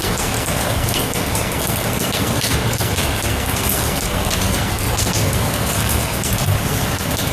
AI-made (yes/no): yes